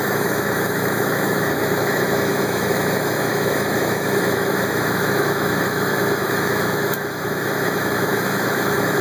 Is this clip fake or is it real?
fake